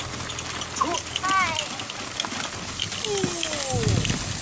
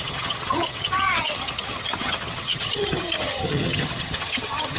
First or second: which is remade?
second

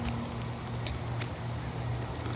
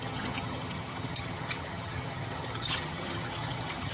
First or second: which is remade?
second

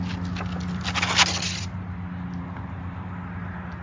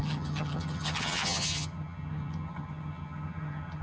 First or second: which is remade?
second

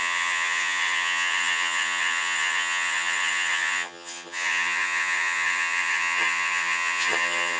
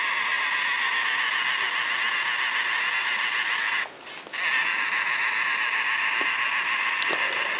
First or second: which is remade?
first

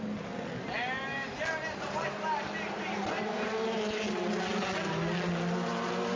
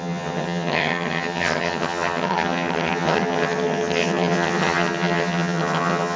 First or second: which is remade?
second